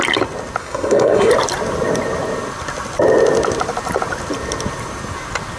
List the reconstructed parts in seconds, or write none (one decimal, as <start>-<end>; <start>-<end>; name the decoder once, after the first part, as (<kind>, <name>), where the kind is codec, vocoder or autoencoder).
0.6-1.3 (codec, SNAC)